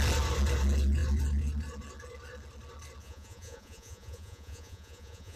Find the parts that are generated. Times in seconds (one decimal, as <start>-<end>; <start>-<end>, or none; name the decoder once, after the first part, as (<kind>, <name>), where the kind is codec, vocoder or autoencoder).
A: 3.0-5.4 (vocoder, Vocos)